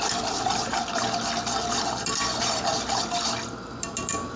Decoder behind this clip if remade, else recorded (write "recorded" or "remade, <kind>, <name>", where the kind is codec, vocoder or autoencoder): recorded